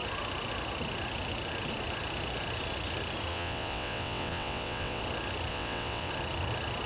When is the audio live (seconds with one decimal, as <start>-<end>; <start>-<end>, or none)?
0.0-3.3; 5.0-5.5; 6.1-6.9